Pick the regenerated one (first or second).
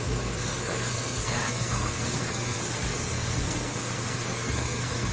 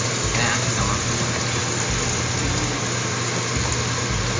first